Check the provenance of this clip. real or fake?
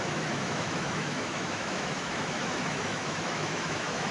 fake